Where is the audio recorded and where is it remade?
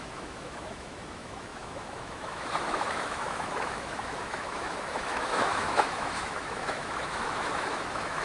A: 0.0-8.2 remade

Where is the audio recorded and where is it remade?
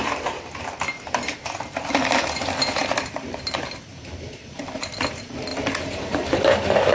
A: 0.0-6.9 remade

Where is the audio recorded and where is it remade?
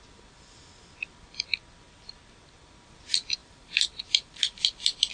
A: 0.0-3.4 recorded; 3.4-5.1 remade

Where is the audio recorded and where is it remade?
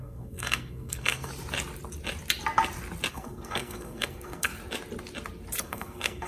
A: 0.0-1.3 remade; 1.3-3.1 recorded; 3.1-4.5 remade; 4.5-5.6 recorded; 5.6-6.3 remade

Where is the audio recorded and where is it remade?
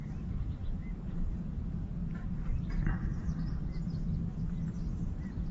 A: 0.0-0.6 recorded; 0.6-1.5 remade; 1.5-2.0 recorded; 2.0-2.6 remade; 2.6-5.5 recorded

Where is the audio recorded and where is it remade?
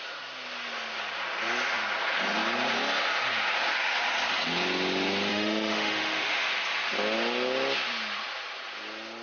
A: 0.0-5.3 recorded; 5.3-6.5 remade; 6.5-9.2 recorded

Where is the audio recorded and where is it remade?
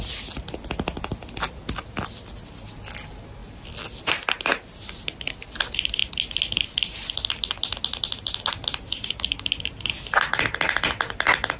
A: 0.0-11.6 recorded